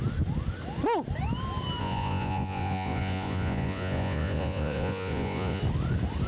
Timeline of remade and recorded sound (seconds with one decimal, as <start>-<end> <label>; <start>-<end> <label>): 0.0-1.8 recorded; 1.8-5.6 remade; 5.6-6.3 recorded